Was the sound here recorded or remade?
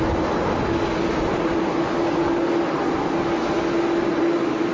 recorded